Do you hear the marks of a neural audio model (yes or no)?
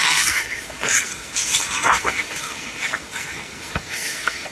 yes